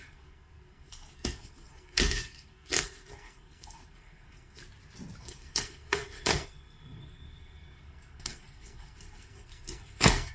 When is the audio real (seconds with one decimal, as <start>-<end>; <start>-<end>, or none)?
4.6-5.2